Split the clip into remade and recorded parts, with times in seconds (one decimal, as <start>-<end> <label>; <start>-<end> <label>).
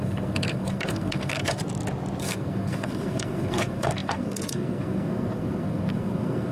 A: 0.0-1.6 remade; 1.6-2.2 recorded; 2.2-6.5 remade